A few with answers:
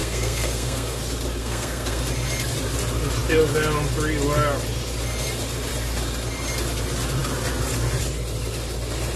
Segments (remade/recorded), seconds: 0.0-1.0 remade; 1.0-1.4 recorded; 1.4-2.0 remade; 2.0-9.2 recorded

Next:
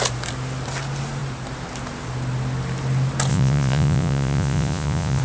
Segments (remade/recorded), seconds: 0.0-3.3 recorded; 3.3-5.2 remade

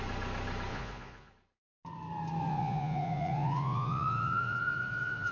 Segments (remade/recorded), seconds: 0.0-0.7 recorded; 0.7-1.3 remade; 1.3-2.5 recorded; 2.5-5.3 remade

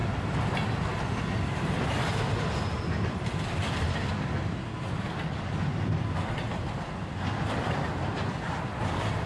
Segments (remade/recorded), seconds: 0.0-1.2 recorded; 1.2-9.3 remade

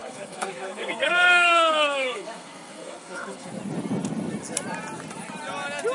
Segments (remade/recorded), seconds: 0.0-3.5 remade; 3.5-5.9 recorded

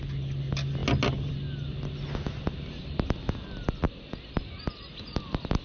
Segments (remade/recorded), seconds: 0.0-5.6 recorded